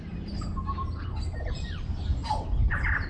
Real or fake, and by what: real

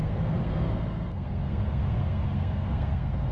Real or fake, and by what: fake, codec, SNAC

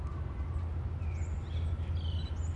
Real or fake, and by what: real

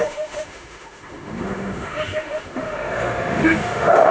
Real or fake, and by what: fake, autoencoder, DAC-VAE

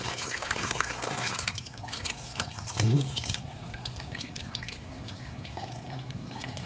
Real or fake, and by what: fake, codec, SNAC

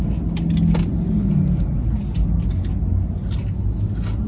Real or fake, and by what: real